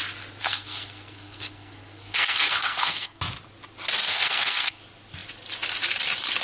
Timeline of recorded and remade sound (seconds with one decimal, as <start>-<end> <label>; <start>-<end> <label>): 0.0-0.4 recorded; 0.4-3.2 remade; 3.2-4.1 recorded; 4.1-4.8 remade; 4.8-6.4 recorded